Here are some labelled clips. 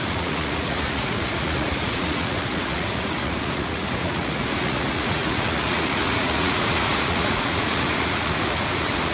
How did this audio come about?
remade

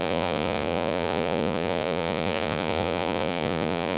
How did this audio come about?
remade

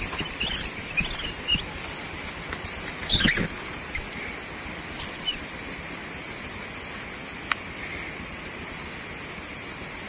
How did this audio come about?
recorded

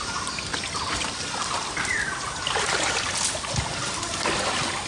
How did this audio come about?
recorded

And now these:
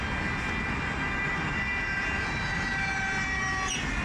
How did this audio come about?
recorded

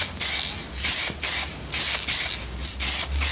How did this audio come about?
recorded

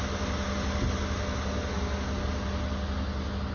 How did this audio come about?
recorded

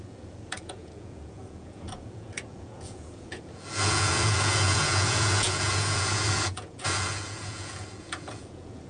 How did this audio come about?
remade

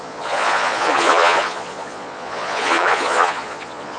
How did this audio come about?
remade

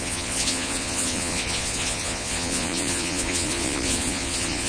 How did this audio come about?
remade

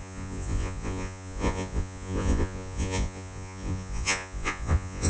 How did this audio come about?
remade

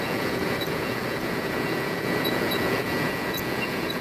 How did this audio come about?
remade